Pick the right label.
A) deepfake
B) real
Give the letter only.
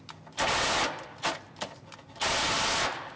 B